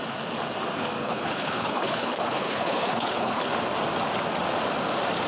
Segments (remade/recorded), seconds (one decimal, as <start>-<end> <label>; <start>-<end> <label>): 0.0-1.0 recorded; 1.0-3.5 remade; 3.5-5.3 recorded